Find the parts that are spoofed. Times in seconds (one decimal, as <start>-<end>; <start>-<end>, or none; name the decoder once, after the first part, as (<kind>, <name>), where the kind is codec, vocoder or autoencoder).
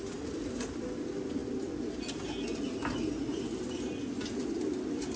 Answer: none